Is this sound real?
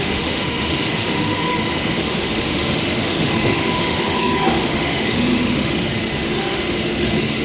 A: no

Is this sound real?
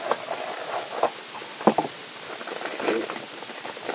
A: yes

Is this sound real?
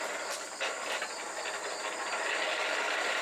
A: yes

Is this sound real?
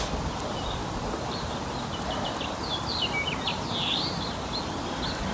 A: yes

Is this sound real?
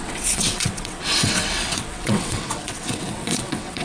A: no